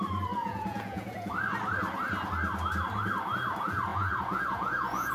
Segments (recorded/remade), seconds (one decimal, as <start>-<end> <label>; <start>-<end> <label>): 0.0-0.4 recorded; 0.4-1.3 remade; 1.3-3.9 recorded; 3.9-5.1 remade